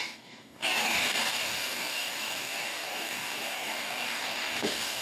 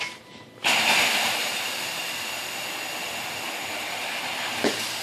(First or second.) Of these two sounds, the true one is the second